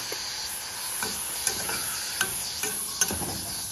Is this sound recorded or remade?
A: recorded